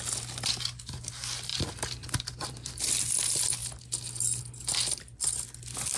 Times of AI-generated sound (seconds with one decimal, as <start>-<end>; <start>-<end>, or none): 1.5-3.0